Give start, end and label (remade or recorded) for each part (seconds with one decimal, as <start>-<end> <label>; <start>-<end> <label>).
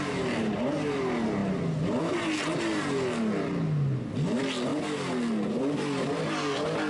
0.0-6.9 recorded